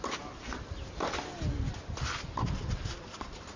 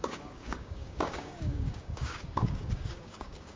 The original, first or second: first